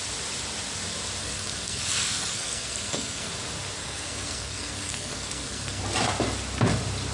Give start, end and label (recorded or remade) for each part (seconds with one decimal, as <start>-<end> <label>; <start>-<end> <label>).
0.0-1.2 recorded; 1.2-3.3 remade; 3.3-3.8 recorded; 3.8-5.8 remade; 5.8-7.1 recorded